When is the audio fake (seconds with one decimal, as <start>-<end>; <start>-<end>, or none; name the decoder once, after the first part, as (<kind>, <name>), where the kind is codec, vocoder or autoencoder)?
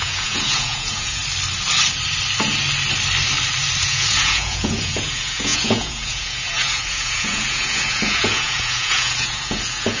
0.0-1.2 (vocoder, Vocos); 3.8-10.0